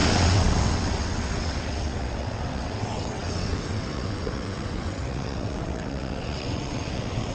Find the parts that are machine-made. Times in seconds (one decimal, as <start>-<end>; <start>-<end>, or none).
0.0-7.3